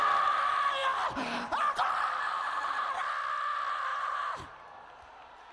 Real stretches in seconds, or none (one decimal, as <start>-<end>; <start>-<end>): 0.0-3.9